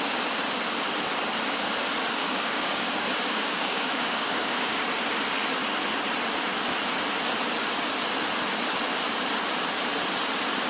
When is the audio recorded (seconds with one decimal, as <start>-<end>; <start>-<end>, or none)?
0.0-2.2; 4.8-10.7

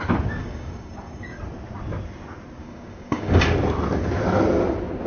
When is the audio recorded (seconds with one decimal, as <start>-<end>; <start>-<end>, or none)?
0.0-0.4; 1.4-2.6; 3.4-5.1

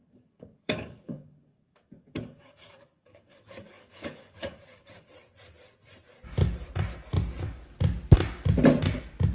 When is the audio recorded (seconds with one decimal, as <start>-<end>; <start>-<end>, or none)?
4.9-9.3

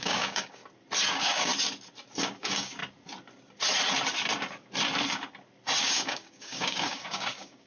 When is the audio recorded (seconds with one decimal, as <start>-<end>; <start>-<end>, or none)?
0.6-1.1; 1.5-2.2; 2.8-5.8

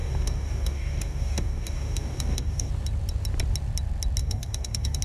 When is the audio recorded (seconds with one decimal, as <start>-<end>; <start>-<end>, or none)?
2.7-4.2

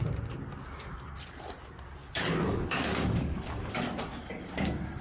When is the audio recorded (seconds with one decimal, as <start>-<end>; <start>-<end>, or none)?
0.0-2.0

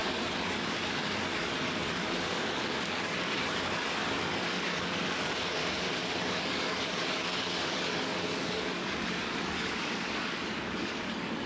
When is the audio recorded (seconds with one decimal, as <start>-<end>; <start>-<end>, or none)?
5.6-6.3